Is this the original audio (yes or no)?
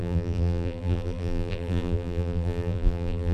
no